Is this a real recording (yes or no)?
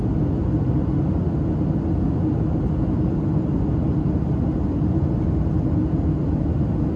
yes